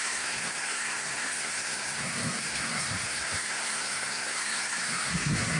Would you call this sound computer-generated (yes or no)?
yes